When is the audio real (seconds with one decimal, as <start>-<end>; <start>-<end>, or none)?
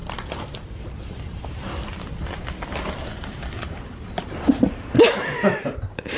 0.0-6.2